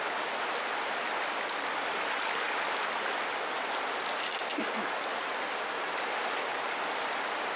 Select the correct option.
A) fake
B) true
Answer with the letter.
B